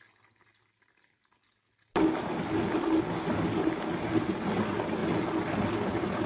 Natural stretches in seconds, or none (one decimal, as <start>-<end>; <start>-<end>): 0.0-6.3